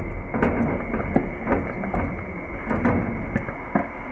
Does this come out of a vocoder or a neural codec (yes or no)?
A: no